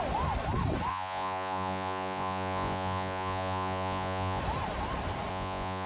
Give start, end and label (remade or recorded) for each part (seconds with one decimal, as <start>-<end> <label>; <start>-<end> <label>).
0.0-0.9 recorded; 0.9-4.4 remade; 4.4-5.3 recorded; 5.3-5.9 remade